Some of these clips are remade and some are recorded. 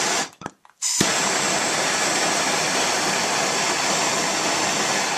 recorded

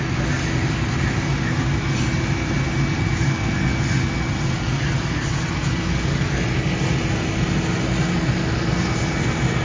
recorded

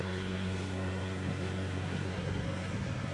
remade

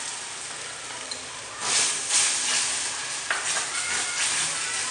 recorded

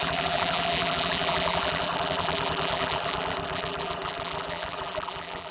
remade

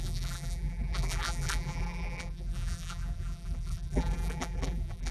remade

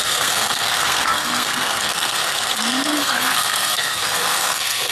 remade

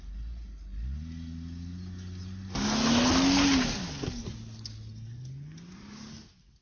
recorded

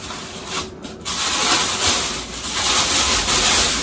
recorded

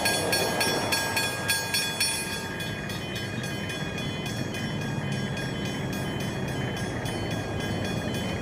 recorded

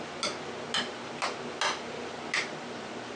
recorded